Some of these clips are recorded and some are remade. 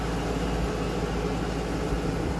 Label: recorded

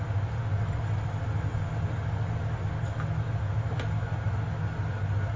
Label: recorded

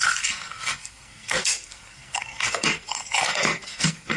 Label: remade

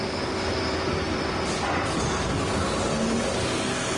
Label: recorded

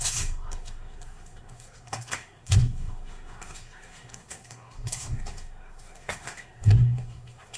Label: remade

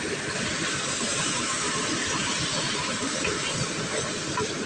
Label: recorded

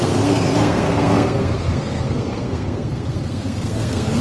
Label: remade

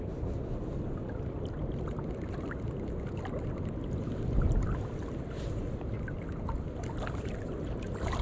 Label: recorded